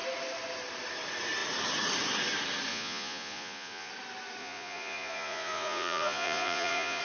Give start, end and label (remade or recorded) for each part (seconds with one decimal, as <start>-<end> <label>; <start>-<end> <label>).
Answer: 0.0-2.7 recorded; 2.7-3.9 remade; 3.9-4.4 recorded; 4.4-7.0 remade